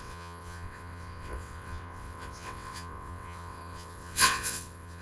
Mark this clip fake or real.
fake